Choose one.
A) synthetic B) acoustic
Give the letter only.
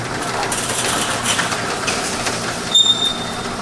A